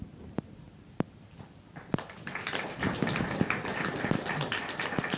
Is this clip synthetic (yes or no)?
no